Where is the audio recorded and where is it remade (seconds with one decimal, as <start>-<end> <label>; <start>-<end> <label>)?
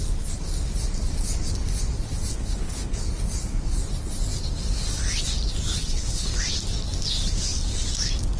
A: 0.0-2.3 recorded; 2.3-3.0 remade; 3.0-5.8 recorded; 5.8-6.4 remade; 6.4-8.4 recorded